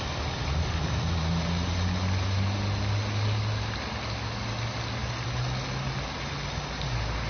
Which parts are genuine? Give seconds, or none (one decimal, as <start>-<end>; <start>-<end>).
0.0-7.3